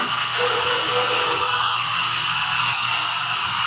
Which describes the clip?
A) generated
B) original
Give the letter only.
A